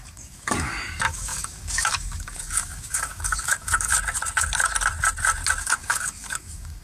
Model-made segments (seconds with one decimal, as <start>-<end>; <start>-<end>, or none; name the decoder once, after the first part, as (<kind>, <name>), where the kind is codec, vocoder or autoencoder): 0.0-3.9 (codec, DAC); 5.6-6.8